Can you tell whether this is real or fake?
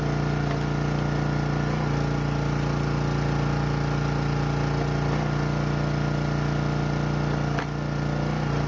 real